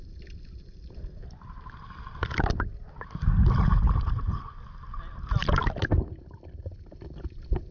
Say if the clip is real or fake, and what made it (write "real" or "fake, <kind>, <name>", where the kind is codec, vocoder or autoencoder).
real